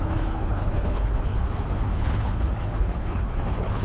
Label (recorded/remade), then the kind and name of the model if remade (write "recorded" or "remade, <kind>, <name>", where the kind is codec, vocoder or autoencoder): remade, codec, HILCodec